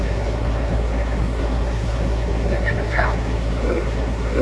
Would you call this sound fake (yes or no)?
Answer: yes